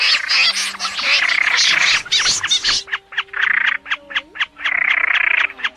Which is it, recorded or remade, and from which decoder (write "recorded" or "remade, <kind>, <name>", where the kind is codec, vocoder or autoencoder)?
recorded